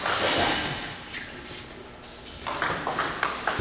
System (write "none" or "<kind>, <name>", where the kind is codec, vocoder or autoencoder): none